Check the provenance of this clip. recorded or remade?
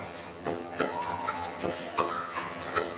remade